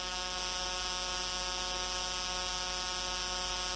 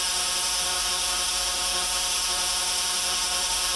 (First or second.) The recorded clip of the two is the first